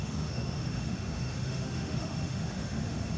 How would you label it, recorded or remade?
remade